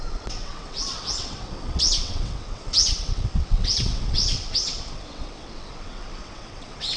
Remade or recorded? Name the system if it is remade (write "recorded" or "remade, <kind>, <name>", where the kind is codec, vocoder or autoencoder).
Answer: remade, vocoder, WaveNeXt